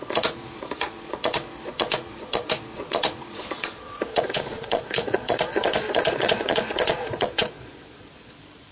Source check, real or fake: fake